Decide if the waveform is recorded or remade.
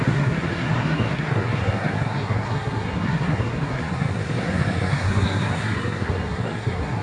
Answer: remade